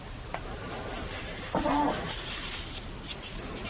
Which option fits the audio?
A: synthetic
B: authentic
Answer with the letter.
B